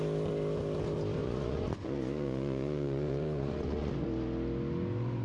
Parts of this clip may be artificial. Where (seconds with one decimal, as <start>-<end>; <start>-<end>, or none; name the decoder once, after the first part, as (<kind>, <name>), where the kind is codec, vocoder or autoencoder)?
1.2-3.9 (vocoder, Vocos)

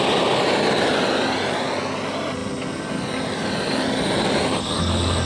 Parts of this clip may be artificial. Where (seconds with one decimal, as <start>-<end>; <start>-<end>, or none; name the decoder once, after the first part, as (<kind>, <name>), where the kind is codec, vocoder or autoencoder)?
none